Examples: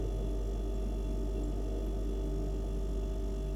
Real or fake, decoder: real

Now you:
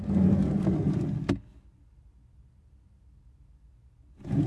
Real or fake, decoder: real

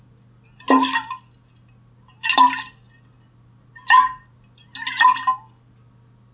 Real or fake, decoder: real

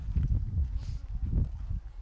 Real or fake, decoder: real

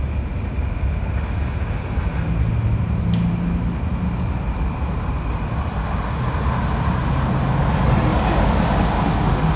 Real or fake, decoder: real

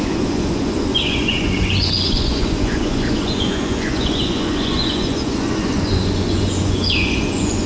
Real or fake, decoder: fake, vocoder, Vocos